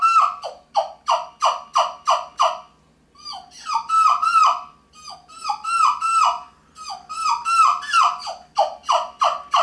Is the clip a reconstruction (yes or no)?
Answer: no